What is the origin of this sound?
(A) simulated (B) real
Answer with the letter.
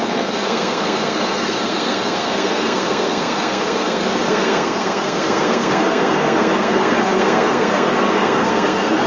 A